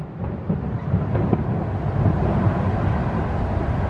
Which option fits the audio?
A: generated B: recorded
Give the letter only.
B